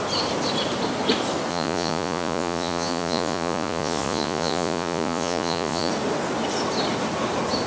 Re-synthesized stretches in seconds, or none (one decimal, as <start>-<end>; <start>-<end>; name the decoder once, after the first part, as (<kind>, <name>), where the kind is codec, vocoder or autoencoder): 1.5-5.9 (vocoder, Vocos)